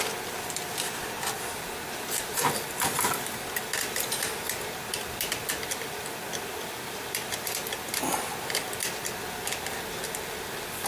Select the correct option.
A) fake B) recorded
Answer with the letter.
B